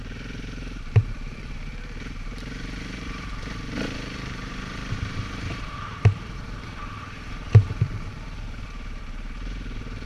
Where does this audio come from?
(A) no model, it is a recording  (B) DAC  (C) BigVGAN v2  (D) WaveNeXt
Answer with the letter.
C